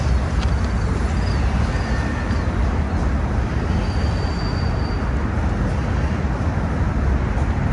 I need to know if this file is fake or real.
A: real